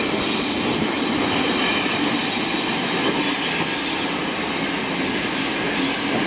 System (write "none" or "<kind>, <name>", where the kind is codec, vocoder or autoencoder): none